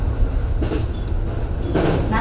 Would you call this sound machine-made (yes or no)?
no